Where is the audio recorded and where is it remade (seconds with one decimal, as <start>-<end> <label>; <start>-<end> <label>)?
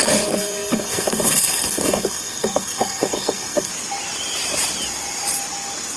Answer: 0.0-3.7 remade; 3.7-6.0 recorded